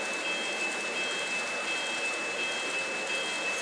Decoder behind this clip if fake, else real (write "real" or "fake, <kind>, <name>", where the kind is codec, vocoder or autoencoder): real